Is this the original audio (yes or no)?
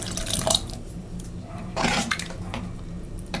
no